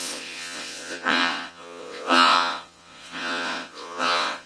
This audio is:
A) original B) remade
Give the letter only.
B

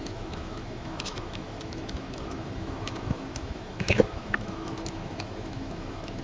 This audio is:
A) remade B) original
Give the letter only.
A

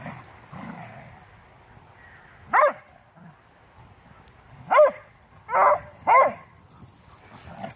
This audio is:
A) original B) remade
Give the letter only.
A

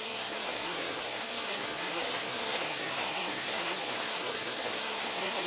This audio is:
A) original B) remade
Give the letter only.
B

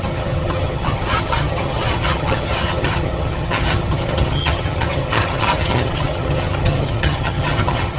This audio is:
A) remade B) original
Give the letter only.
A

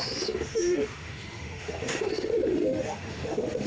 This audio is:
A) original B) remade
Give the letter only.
B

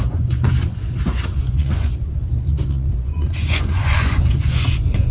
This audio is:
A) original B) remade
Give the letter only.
B